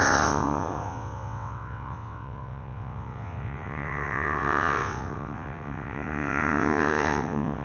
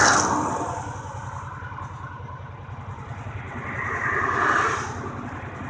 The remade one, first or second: first